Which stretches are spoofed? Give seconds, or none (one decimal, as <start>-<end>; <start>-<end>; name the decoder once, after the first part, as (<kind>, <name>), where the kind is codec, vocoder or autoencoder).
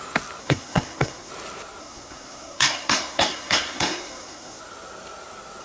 0.4-1.3 (codec, SNAC); 1.8-4.6